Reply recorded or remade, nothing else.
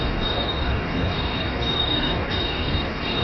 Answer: remade